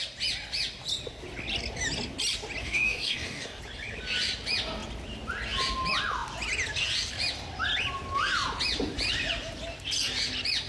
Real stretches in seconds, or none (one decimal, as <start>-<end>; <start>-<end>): 0.0-2.6; 3.6-10.7